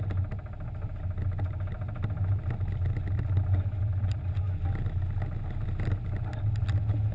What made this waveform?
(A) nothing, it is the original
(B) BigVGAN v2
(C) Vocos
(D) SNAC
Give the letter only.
A